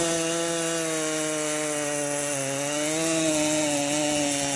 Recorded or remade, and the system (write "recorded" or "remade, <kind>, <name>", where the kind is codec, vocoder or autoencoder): recorded